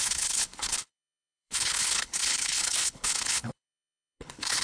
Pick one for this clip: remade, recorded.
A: remade